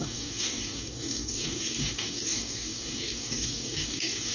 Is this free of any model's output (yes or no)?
no